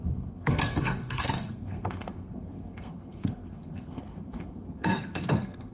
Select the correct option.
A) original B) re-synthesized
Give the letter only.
B